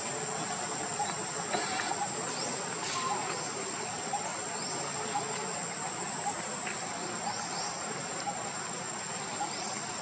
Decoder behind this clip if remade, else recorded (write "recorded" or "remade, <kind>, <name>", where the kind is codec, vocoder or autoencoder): recorded